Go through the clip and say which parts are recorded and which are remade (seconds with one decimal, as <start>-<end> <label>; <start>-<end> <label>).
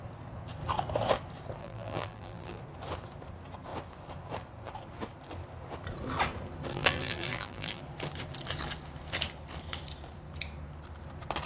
0.0-1.6 recorded; 1.6-2.6 remade; 2.6-6.7 recorded; 6.7-7.8 remade; 7.8-11.5 recorded